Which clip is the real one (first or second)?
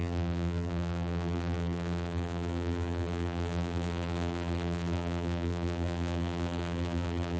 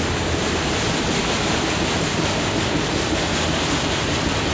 second